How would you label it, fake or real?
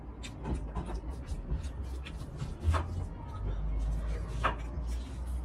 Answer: real